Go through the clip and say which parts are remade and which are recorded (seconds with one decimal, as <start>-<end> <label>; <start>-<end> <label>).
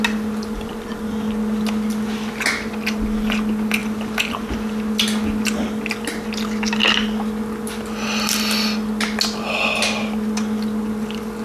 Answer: 0.0-11.4 recorded